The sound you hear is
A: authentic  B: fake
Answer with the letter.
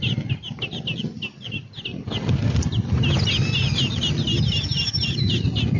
A